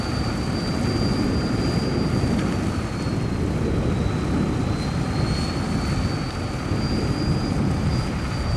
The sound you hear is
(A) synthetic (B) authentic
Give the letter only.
B